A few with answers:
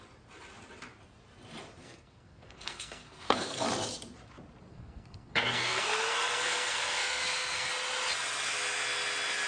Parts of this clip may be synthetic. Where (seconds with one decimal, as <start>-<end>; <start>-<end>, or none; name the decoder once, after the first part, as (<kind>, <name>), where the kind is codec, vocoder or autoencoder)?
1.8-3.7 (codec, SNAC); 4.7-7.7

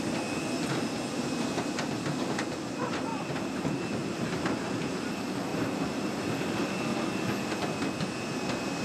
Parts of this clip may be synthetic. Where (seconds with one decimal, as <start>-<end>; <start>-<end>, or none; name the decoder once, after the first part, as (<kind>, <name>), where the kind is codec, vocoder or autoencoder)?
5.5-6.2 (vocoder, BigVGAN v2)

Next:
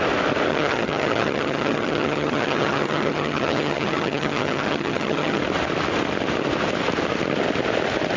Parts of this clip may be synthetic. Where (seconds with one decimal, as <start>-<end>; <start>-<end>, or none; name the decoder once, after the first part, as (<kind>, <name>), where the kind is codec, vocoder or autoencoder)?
0.5-5.4 (vocoder, HiFi-GAN)

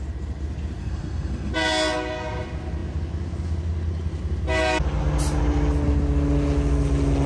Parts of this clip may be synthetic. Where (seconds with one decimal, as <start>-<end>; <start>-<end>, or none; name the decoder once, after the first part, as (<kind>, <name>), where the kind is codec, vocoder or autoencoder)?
0.8-1.5 (codec, SNAC)